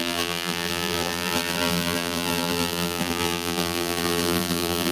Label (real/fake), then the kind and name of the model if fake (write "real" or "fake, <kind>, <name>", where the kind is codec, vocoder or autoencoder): fake, vocoder, BigVGAN v2